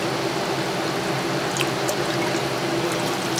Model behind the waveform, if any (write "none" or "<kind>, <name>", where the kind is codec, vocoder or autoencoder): none